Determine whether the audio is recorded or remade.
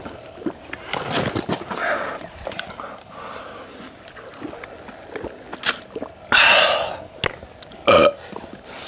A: recorded